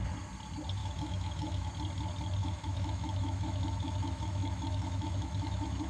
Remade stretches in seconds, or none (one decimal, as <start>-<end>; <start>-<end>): 0.8-1.7; 2.4-5.9